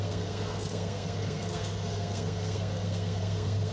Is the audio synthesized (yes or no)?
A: yes